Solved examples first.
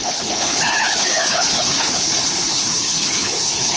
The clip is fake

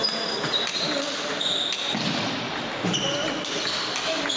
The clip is real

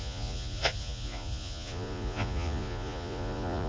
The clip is fake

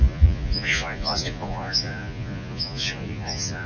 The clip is fake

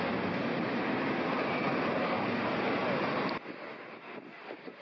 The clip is real